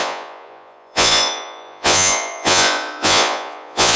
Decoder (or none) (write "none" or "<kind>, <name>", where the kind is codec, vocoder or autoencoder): vocoder, Vocos